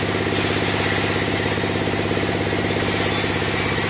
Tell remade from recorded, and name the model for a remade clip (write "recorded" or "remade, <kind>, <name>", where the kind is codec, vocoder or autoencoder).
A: recorded